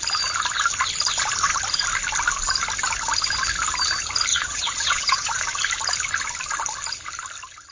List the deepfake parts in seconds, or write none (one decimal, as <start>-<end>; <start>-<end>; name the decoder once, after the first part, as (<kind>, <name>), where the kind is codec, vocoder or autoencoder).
4.3-5.4 (vocoder, Vocos)